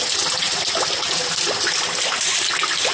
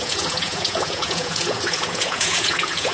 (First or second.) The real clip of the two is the first